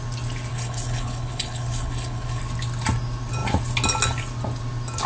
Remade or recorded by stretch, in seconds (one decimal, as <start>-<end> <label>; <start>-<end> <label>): 0.0-0.5 recorded; 0.5-2.4 remade; 2.4-5.1 recorded